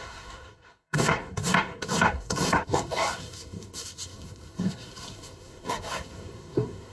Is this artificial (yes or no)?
yes